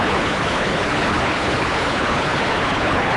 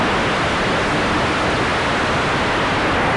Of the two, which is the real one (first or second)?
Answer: second